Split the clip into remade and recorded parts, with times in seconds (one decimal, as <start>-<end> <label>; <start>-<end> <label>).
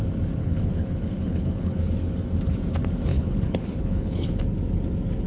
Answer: 0.0-0.4 recorded; 0.4-1.9 remade; 1.9-3.1 recorded; 3.1-4.4 remade; 4.4-5.3 recorded